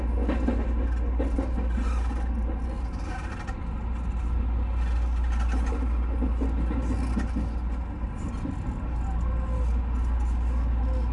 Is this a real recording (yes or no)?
yes